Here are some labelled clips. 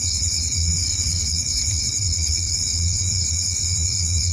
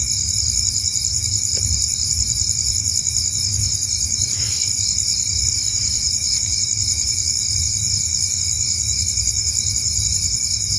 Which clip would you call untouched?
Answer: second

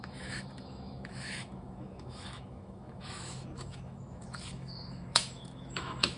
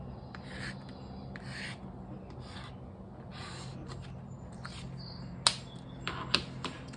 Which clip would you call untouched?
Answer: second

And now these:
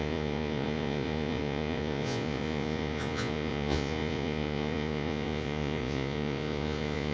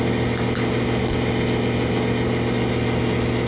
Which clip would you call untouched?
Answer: second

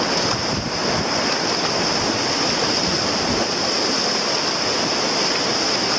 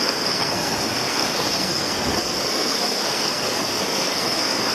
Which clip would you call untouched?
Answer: first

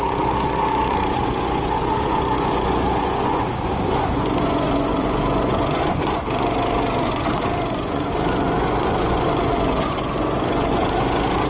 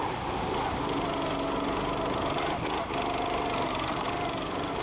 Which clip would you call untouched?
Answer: second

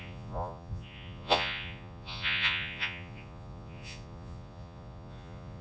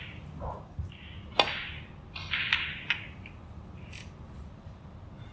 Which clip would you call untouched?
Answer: second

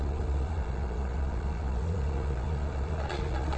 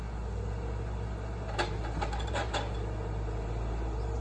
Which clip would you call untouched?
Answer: second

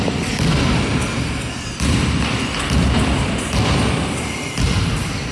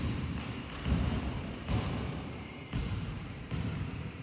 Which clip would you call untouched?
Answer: first